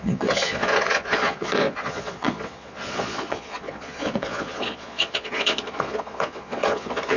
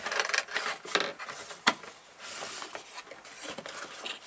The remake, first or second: first